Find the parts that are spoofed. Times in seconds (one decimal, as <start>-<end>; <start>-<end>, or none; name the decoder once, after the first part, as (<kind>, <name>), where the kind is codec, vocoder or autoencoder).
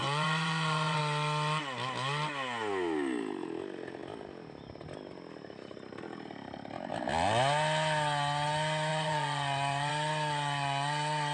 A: 0.0-1.0 (vocoder, Vocos); 8.9-9.9